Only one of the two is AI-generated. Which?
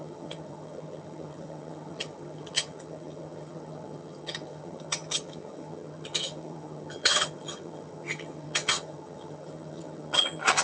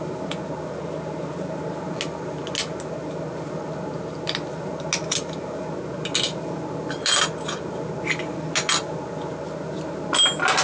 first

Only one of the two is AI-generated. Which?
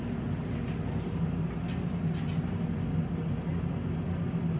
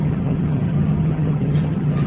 second